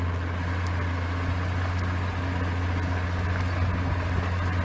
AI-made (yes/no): no